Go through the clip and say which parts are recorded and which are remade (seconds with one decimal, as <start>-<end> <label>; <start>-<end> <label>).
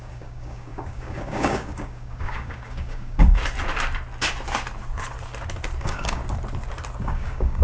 0.0-3.4 remade; 3.4-5.8 recorded; 5.8-6.2 remade; 6.2-7.0 recorded; 7.0-7.6 remade